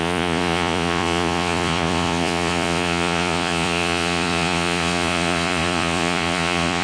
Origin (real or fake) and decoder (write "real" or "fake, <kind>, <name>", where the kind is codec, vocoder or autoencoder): fake, vocoder, Vocos